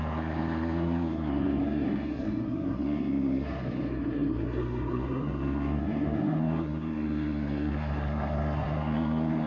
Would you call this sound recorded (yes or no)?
no